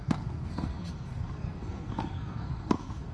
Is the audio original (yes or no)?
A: no